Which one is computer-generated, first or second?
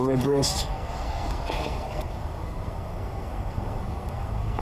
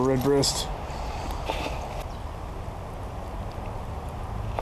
first